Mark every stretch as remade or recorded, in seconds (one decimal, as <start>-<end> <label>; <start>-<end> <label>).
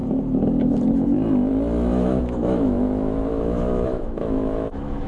0.0-1.9 recorded; 1.9-5.1 remade